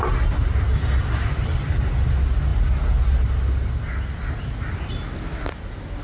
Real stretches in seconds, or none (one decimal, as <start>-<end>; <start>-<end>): 0.0-6.0